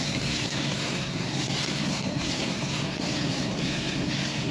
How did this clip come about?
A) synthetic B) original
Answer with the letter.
A